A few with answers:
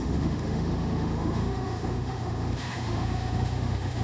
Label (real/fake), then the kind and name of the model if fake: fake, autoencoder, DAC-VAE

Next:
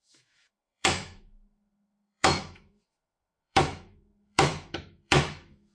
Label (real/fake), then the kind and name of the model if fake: fake, autoencoder, DAC-VAE